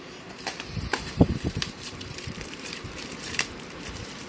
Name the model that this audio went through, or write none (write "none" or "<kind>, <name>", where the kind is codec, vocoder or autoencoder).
vocoder, BigVGAN v2